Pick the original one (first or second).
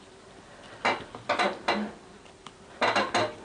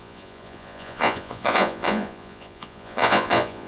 first